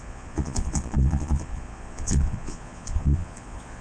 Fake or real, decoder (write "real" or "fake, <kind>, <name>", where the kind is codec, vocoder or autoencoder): fake, vocoder, Vocos